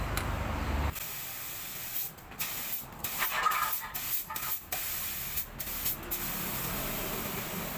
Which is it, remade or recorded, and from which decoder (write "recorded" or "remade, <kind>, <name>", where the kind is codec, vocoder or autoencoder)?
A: recorded